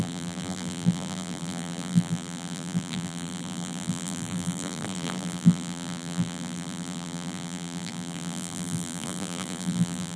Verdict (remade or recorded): remade